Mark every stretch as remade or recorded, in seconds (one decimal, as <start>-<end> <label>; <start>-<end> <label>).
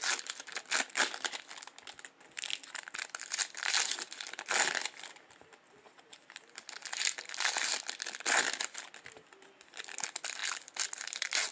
0.0-11.5 recorded